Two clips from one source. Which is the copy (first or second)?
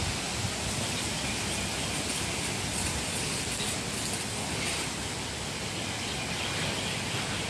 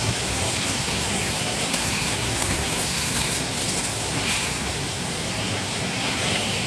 second